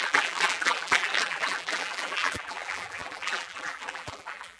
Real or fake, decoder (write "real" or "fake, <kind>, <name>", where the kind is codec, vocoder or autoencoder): fake, vocoder, BigVGAN v2